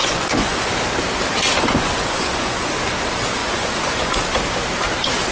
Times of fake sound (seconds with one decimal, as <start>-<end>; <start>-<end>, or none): 0.0-0.7; 1.6-2.7; 3.4-4.2